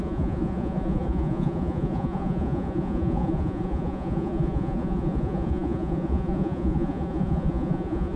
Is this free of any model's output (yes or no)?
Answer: no